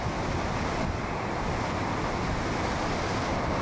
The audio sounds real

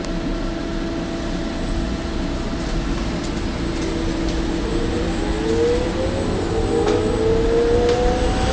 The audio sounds real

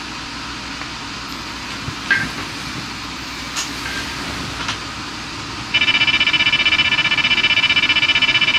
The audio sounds real